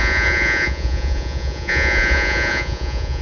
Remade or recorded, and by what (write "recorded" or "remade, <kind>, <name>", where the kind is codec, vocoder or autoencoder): remade, vocoder, Vocos